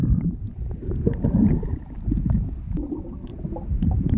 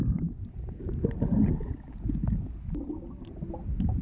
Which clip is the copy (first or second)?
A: first